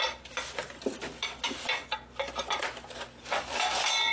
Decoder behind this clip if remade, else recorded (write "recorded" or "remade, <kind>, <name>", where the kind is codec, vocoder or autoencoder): recorded